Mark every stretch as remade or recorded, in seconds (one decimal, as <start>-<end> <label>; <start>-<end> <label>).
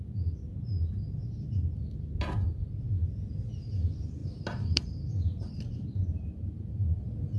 0.0-4.2 recorded; 4.2-7.4 remade